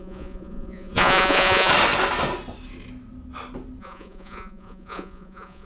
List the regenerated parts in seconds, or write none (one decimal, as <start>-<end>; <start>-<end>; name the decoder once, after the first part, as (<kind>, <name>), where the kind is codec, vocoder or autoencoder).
0.0-1.7 (vocoder, Vocos); 3.8-5.7